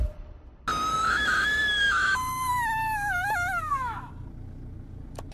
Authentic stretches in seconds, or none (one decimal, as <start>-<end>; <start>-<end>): 0.0-0.9; 4.1-5.3